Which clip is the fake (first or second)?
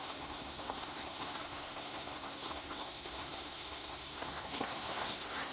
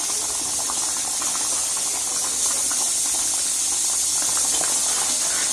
first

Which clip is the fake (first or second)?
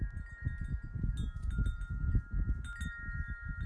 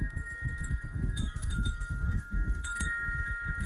second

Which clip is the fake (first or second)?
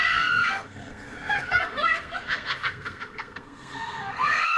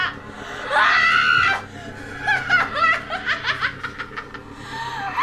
first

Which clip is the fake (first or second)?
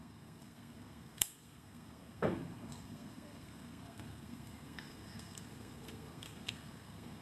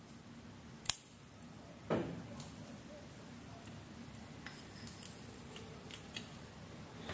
first